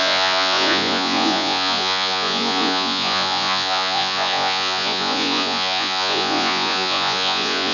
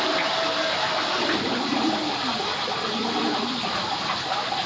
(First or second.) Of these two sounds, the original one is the second